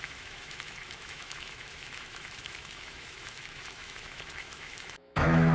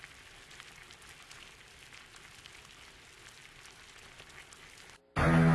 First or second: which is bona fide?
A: second